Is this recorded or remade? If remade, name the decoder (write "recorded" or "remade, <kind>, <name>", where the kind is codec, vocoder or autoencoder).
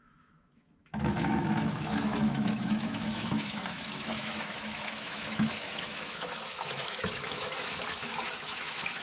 remade, autoencoder, DAC-VAE